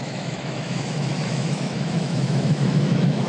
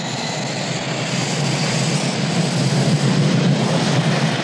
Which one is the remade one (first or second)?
first